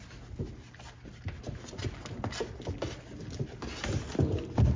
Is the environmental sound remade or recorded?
recorded